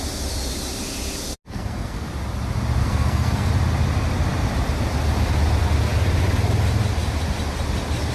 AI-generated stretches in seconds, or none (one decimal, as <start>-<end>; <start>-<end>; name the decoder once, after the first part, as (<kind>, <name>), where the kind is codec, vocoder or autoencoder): 1.5-2.1 (codec, SNAC); 2.8-3.5